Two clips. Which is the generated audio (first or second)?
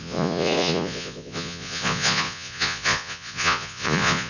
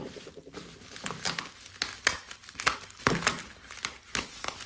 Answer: first